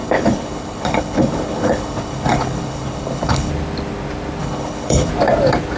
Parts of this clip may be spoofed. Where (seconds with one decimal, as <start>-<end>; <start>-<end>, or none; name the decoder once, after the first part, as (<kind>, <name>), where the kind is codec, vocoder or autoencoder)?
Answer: 0.0-3.5 (codec, HILCodec); 4.4-5.1